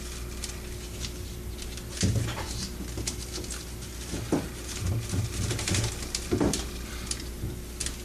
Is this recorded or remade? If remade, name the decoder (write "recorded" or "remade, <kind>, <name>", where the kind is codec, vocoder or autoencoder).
recorded